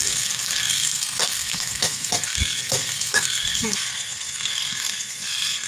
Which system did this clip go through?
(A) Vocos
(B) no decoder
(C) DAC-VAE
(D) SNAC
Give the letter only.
D